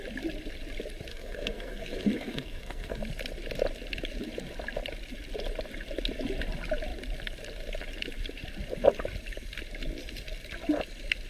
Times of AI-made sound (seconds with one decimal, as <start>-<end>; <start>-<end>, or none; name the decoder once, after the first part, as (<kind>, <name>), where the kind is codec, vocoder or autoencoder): 1.1-3.0 (codec, SNAC)